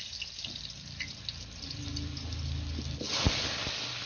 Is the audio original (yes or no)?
yes